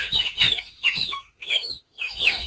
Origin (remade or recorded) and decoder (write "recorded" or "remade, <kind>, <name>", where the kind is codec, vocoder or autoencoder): remade, autoencoder, DAC-VAE